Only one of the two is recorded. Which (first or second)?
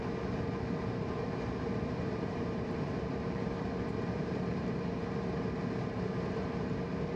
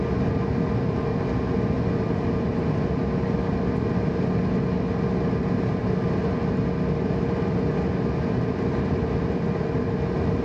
second